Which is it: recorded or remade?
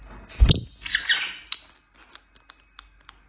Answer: recorded